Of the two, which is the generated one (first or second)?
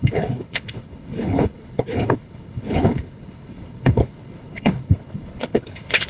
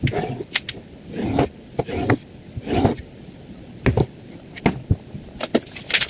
first